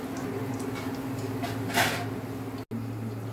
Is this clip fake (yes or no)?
no